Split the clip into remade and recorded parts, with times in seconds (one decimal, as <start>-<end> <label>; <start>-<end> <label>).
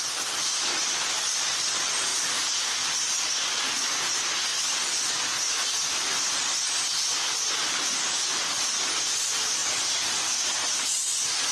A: 0.0-11.5 recorded